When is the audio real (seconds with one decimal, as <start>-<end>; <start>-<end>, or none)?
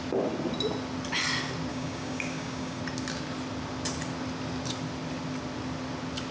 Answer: 0.0-1.7; 2.8-6.3